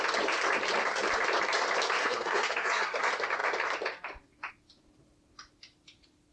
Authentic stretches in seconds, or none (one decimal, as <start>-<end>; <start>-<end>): 0.0-2.0; 3.0-6.3